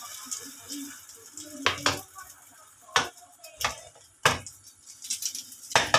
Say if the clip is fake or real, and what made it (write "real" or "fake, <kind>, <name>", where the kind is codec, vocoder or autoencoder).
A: real